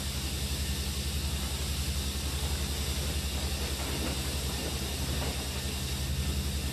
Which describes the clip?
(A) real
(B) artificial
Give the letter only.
A